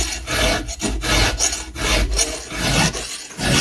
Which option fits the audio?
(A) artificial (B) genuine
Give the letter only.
B